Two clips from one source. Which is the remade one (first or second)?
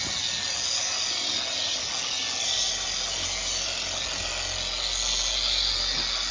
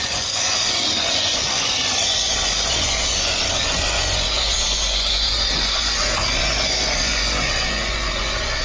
second